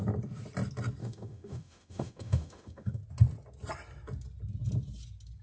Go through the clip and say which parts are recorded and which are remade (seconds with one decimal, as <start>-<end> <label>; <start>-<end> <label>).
0.0-1.0 recorded; 1.0-3.0 remade; 3.0-5.4 recorded

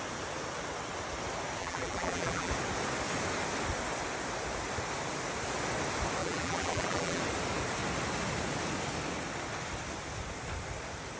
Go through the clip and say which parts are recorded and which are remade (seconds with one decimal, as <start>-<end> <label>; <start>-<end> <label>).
0.0-1.6 recorded; 1.6-2.5 remade; 2.5-6.2 recorded; 6.2-7.2 remade; 7.2-11.2 recorded

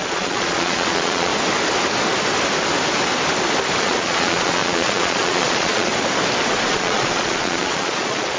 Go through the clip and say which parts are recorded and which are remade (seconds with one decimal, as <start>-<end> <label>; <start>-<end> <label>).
0.0-1.3 remade; 1.3-3.8 recorded; 3.8-5.9 remade; 5.9-6.7 recorded; 6.7-8.4 remade

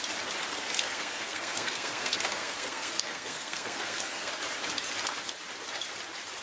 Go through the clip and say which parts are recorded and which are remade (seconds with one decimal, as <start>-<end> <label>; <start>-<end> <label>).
0.0-0.5 recorded; 0.5-4.3 remade; 4.3-6.4 recorded

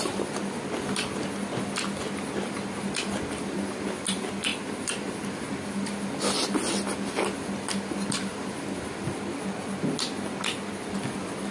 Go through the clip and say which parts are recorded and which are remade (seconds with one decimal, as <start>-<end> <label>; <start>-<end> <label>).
0.0-4.5 recorded; 4.5-5.1 remade; 5.1-11.5 recorded